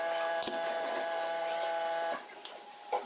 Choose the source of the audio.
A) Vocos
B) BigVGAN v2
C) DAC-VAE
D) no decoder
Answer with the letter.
B